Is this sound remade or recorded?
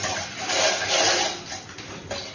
recorded